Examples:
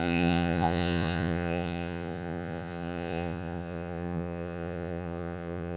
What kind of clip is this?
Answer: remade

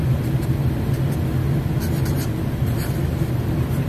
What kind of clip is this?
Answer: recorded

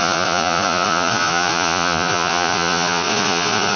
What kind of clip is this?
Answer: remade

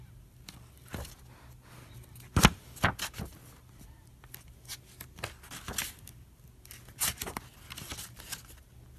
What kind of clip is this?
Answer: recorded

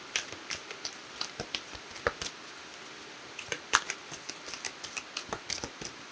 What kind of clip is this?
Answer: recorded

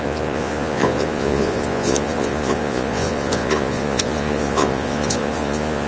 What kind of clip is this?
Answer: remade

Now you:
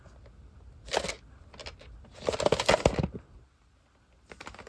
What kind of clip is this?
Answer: recorded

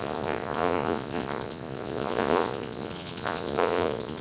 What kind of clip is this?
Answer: remade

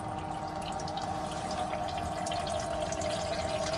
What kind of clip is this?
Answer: recorded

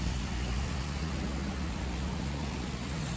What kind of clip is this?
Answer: remade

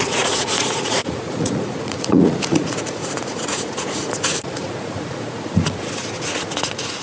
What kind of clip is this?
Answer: remade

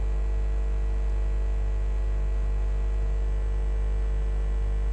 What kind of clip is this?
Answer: recorded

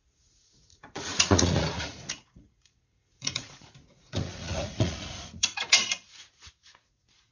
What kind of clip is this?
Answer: remade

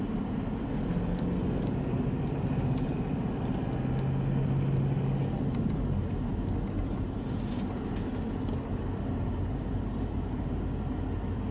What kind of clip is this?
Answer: recorded